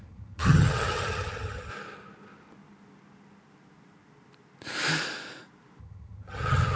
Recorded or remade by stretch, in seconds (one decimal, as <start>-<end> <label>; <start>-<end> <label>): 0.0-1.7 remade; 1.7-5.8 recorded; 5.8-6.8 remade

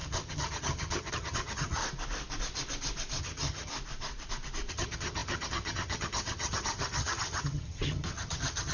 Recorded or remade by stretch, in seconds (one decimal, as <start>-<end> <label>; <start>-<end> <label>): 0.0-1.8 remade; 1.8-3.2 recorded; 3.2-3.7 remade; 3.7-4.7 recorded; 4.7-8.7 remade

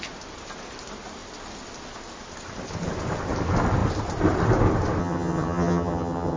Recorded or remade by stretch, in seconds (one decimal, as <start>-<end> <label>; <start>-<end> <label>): 0.0-5.0 recorded; 5.0-6.4 remade